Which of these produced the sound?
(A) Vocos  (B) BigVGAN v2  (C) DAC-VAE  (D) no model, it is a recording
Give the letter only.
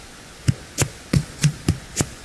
A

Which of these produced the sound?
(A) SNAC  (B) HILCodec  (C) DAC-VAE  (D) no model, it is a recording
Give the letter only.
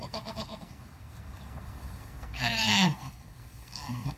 A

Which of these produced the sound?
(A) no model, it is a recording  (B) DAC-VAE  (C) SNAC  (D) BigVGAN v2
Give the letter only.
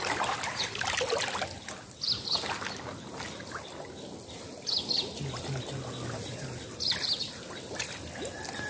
A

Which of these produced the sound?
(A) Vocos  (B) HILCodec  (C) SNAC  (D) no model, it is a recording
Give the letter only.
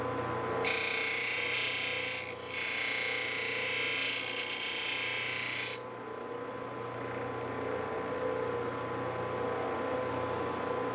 D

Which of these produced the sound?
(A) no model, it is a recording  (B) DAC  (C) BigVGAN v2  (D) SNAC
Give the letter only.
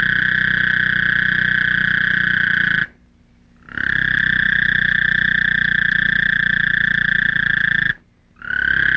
A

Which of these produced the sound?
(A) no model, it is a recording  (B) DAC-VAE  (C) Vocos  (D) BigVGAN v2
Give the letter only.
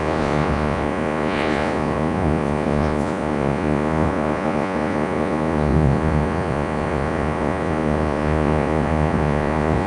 C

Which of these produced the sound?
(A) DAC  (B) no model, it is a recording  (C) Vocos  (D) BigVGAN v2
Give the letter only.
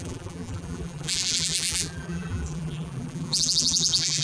D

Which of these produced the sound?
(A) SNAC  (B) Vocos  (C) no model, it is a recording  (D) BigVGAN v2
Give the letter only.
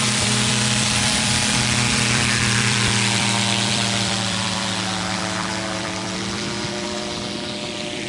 D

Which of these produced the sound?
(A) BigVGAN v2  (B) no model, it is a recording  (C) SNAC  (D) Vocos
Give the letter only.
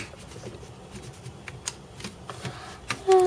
B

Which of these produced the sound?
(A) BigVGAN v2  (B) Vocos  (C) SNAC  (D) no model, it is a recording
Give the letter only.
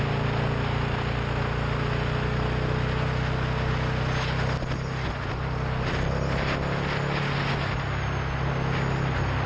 D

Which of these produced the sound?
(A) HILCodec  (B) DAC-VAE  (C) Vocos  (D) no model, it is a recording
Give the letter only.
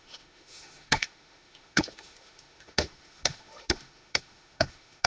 B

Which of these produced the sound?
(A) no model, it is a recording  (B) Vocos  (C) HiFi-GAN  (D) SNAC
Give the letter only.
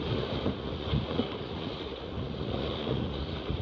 B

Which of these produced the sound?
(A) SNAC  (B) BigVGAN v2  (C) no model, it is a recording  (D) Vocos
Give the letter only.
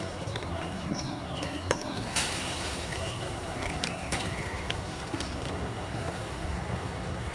A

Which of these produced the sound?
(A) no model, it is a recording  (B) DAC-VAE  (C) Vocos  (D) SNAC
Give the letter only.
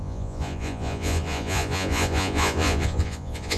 C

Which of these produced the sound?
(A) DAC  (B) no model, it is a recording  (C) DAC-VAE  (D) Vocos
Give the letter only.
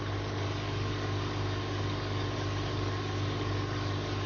A